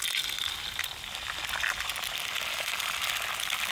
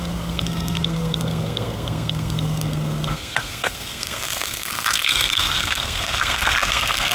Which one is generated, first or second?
second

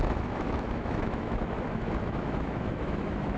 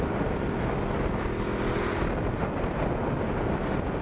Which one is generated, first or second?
first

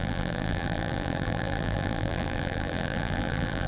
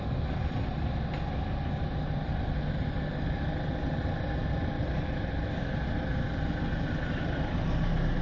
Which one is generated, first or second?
first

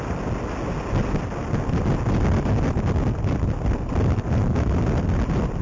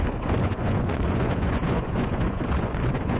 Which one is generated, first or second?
second